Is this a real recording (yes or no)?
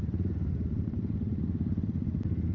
yes